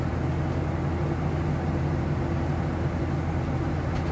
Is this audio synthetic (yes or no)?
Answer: no